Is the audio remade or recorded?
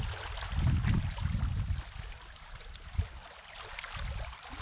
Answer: recorded